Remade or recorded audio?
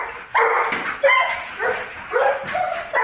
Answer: recorded